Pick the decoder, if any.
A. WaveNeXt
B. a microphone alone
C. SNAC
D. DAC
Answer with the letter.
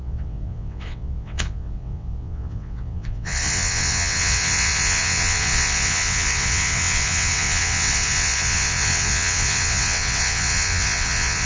A